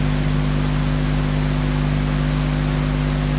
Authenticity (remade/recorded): recorded